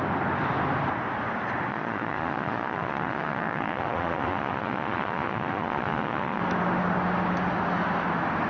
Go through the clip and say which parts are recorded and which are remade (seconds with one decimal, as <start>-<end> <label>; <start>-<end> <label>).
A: 0.0-1.7 recorded; 1.7-6.4 remade; 6.4-8.5 recorded